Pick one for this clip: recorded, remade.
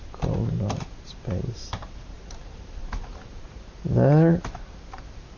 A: remade